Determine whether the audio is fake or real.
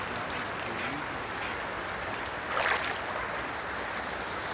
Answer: real